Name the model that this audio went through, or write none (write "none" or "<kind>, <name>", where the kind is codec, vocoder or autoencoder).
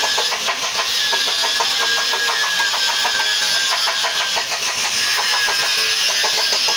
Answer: none